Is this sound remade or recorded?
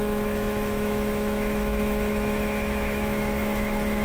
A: remade